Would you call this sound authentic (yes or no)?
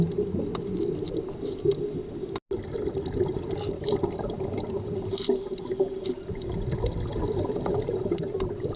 yes